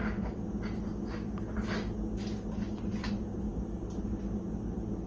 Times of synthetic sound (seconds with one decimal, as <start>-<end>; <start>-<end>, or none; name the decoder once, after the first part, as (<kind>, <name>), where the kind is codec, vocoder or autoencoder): none